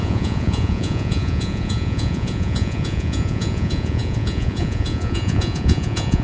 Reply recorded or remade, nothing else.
remade